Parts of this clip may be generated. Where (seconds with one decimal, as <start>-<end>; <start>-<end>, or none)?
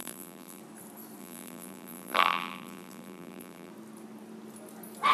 0.0-0.6; 1.2-3.7